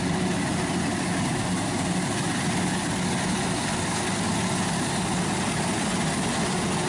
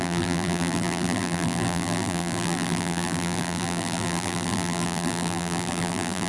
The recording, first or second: first